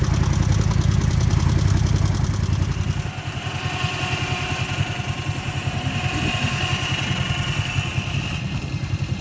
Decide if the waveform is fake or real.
real